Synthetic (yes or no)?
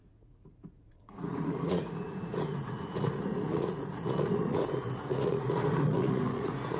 yes